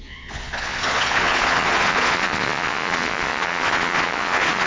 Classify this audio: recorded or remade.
remade